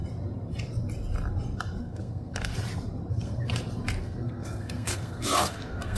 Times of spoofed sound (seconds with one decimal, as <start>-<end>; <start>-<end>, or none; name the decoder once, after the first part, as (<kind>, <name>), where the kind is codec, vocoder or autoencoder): 1.8-2.5 (codec, SNAC); 3.1-3.5; 4.0-6.0